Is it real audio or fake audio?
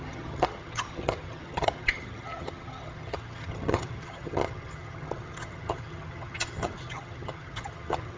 fake